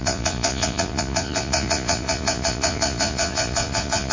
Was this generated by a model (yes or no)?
yes